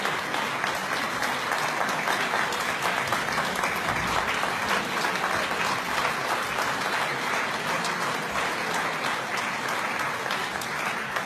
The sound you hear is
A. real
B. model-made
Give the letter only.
A